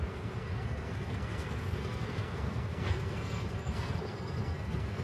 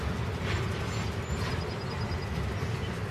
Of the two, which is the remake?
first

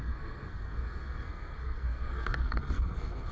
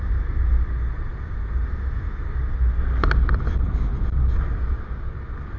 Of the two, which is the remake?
first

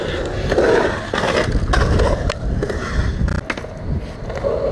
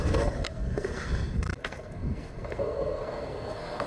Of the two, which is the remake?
second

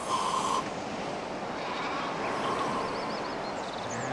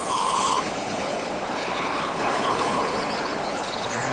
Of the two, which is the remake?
second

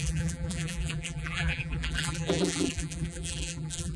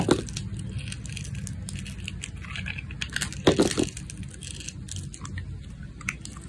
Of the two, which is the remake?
first